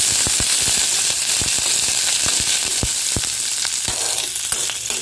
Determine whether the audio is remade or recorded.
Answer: recorded